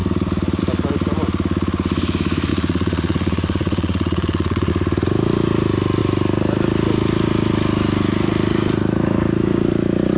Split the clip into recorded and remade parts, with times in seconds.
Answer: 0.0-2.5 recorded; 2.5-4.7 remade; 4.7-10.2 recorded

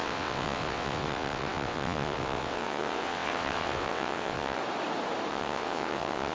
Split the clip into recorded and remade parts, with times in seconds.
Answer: 0.0-4.6 remade; 4.6-5.3 recorded; 5.3-6.3 remade

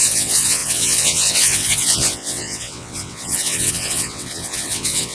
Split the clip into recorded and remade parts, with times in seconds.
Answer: 0.0-5.1 remade

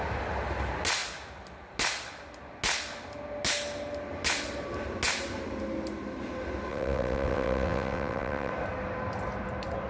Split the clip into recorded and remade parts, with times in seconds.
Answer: 0.0-6.7 recorded; 6.7-8.5 remade; 8.5-9.9 recorded

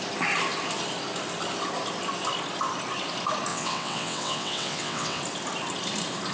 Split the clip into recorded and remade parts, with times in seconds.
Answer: 0.0-3.5 recorded; 3.5-5.2 remade; 5.2-6.3 recorded

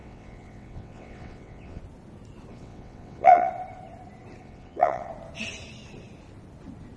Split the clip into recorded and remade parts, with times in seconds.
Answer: 0.0-1.8 remade; 1.8-2.5 recorded; 2.5-3.5 remade; 3.5-4.4 recorded; 4.4-5.1 remade; 5.1-7.0 recorded